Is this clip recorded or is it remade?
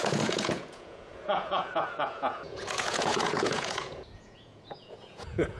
remade